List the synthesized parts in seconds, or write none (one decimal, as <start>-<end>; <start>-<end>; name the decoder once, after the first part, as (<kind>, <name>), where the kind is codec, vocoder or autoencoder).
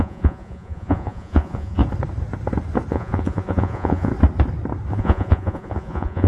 0.0-1.8 (vocoder, Vocos); 2.9-4.1; 4.9-6.3